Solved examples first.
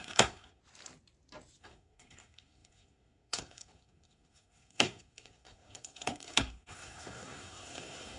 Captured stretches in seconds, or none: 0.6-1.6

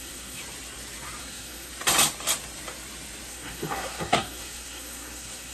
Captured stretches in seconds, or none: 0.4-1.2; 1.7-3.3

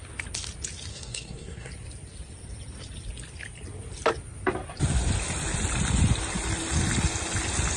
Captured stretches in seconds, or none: 0.0-0.9; 1.7-7.8

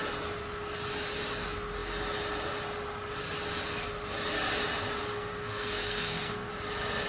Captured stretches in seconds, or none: 0.0-5.1; 6.5-7.1

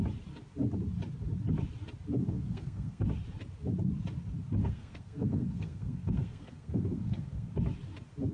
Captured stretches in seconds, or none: 0.0-2.2; 3.0-4.6; 7.5-8.3

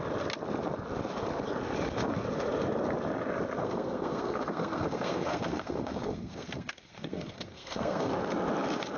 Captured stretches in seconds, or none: 0.0-3.6; 8.1-9.0